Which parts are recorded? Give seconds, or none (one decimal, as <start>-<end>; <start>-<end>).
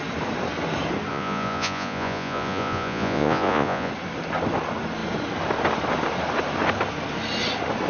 0.0-1.1; 3.9-7.9